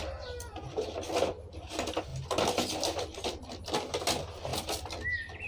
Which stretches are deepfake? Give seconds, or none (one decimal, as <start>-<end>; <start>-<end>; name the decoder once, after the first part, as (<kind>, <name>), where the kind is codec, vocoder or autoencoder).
none